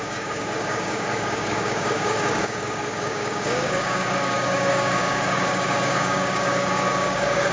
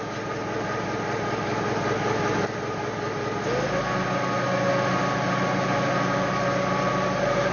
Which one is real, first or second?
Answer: second